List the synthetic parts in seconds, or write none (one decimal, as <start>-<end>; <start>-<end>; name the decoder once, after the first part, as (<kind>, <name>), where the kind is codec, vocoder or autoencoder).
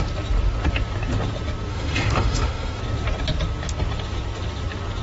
1.7-2.8 (autoencoder, DAC-VAE)